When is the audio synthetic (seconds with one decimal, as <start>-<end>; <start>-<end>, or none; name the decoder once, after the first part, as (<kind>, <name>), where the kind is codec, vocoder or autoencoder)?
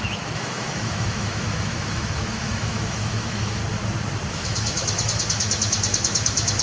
0.0-3.6 (autoencoder, DAC-VAE); 4.3-6.6